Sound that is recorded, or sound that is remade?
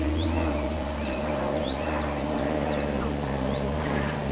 remade